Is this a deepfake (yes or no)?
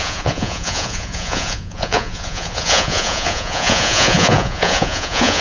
yes